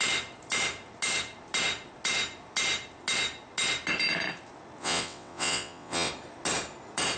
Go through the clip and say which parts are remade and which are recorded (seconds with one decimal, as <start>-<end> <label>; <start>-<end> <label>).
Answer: 0.0-4.8 recorded; 4.8-6.1 remade; 6.1-7.2 recorded